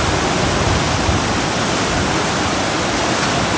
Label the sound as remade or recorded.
recorded